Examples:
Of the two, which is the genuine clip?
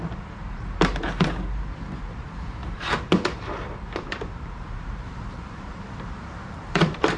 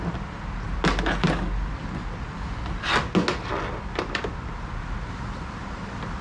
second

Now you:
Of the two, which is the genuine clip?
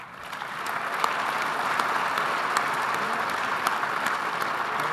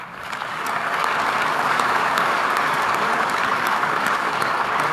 first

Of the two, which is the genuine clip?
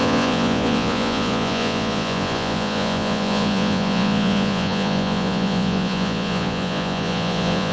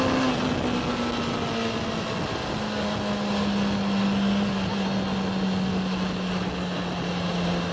second